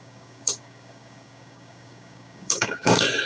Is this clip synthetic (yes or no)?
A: yes